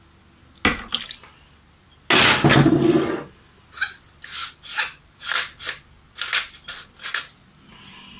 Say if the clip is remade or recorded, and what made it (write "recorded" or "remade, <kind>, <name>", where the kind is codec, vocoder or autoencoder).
recorded